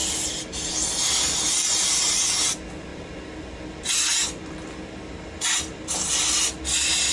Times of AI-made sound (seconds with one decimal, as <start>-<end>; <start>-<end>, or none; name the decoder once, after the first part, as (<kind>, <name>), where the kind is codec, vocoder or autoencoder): none